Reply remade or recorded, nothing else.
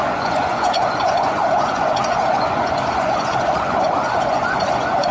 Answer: remade